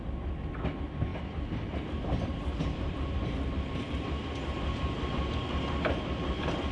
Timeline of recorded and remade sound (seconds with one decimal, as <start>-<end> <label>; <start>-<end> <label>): 0.0-6.7 recorded